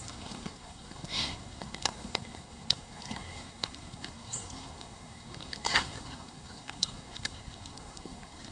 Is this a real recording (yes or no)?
no